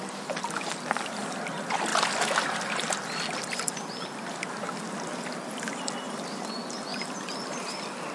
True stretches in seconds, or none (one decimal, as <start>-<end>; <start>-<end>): 0.0-8.1